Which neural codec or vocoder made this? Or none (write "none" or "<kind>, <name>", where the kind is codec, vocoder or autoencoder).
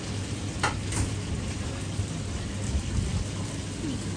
none